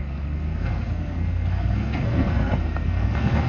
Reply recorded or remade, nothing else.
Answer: remade